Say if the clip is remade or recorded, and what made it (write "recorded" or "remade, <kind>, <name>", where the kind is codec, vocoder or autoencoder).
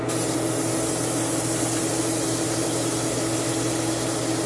recorded